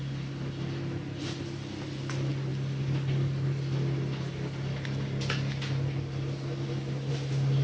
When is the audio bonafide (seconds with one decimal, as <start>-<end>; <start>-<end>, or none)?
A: 0.0-7.6